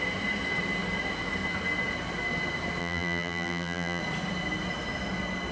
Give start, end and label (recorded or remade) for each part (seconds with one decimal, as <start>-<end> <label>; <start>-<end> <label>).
0.0-2.8 recorded; 2.8-4.0 remade; 4.0-5.5 recorded